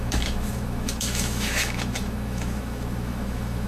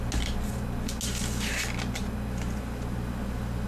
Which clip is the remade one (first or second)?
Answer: first